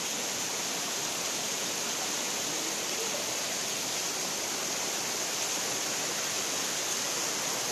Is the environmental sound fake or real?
real